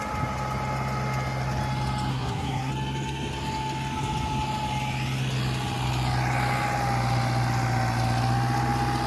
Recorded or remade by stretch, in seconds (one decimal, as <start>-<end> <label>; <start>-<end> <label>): 0.0-2.1 recorded; 2.1-2.7 remade; 2.7-9.1 recorded